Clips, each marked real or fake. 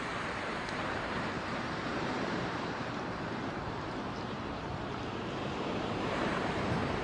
fake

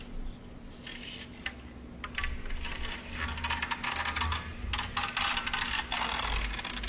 real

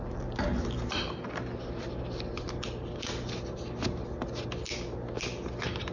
real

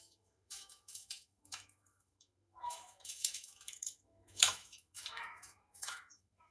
fake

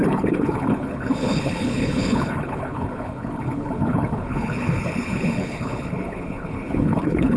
fake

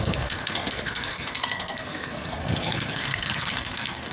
fake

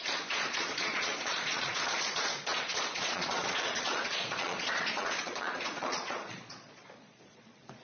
fake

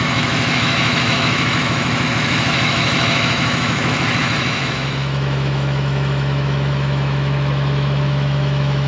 fake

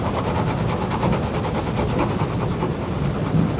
real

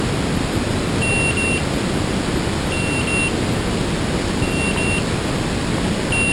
real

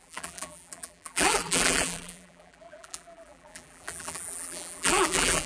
fake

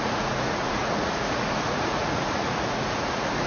fake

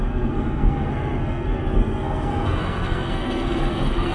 fake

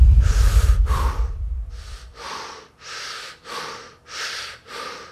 fake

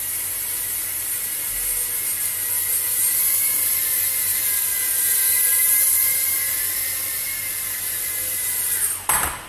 real